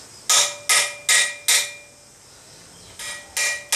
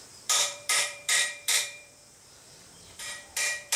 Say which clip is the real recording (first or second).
first